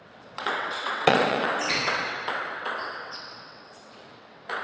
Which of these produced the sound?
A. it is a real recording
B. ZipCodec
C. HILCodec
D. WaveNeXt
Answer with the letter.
D